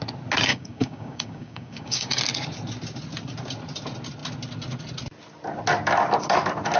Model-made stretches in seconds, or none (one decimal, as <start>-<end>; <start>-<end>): 0.5-2.2